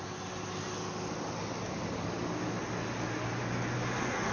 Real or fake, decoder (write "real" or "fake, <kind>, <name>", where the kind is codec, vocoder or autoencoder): real